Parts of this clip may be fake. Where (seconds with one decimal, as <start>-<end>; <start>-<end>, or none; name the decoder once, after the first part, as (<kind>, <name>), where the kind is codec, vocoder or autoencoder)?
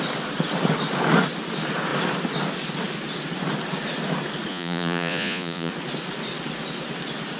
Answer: 4.5-5.7 (vocoder, Vocos)